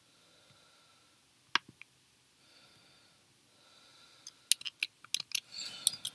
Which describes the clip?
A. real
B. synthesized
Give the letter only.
A